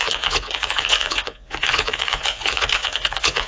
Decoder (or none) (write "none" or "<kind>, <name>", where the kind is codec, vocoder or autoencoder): vocoder, Vocos